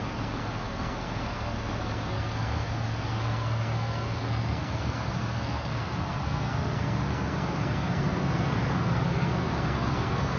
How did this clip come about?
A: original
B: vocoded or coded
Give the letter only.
B